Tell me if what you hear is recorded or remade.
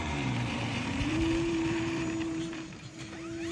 remade